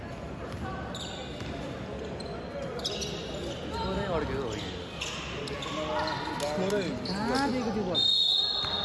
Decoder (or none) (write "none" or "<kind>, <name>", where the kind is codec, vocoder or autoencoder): none